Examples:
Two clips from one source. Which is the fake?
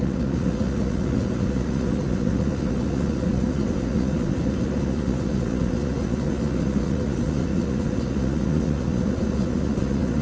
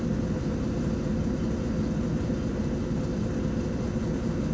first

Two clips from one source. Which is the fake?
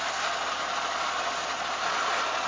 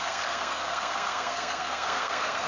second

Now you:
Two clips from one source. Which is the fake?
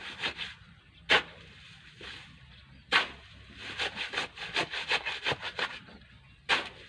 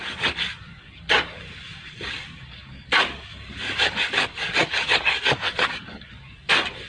second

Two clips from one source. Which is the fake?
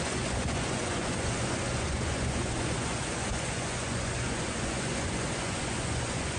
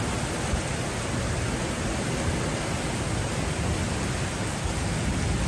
first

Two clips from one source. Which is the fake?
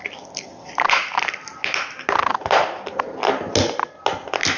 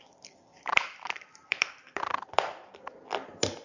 second